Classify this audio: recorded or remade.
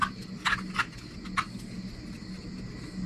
recorded